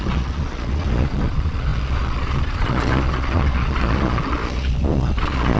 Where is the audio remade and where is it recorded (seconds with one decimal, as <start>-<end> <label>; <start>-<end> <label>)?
0.0-5.6 remade